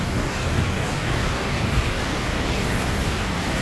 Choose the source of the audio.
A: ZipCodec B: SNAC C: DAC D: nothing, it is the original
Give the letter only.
C